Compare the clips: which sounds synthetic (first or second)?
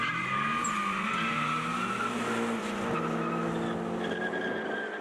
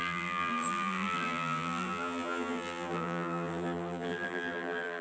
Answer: second